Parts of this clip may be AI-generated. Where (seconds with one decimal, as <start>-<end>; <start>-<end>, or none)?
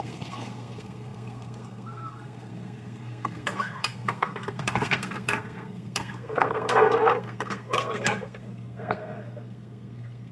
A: 0.0-10.3